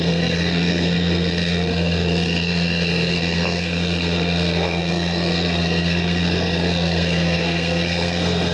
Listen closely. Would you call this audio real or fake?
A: fake